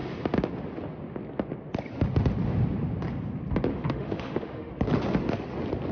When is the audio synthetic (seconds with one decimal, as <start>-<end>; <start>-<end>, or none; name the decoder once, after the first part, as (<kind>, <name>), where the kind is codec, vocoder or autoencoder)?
3.7-4.7 (autoencoder, DAC-VAE)